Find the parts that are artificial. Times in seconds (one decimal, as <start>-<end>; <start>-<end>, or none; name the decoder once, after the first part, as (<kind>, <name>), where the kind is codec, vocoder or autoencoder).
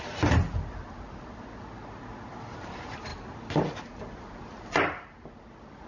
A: none